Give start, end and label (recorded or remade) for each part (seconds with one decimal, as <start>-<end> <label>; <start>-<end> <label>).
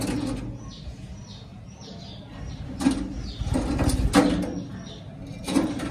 0.0-1.5 recorded; 1.5-2.6 remade; 2.6-5.2 recorded; 5.2-5.9 remade